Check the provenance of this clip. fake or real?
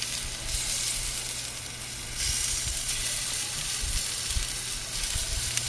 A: real